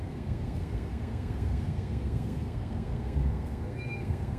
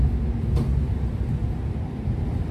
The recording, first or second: second